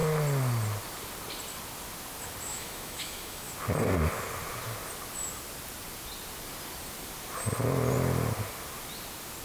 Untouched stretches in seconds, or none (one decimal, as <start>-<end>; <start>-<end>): 0.0-2.5; 3.5-9.4